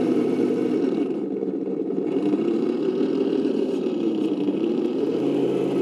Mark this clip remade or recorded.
remade